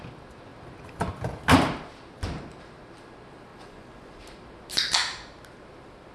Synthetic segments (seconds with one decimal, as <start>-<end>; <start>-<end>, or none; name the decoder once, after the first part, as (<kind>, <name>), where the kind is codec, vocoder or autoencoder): 3.5-4.2 (vocoder, Vocos)